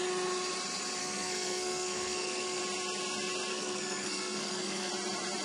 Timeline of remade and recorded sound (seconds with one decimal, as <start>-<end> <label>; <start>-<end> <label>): 0.0-1.0 recorded; 1.0-2.6 remade; 2.6-3.5 recorded; 3.5-4.9 remade; 4.9-5.4 recorded